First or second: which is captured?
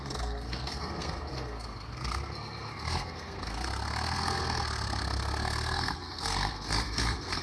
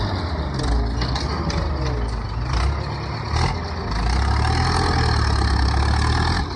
second